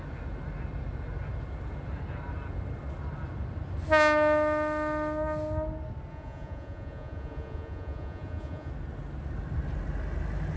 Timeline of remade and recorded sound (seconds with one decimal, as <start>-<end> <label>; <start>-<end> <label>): 0.0-6.1 recorded; 6.1-8.7 remade; 8.7-10.6 recorded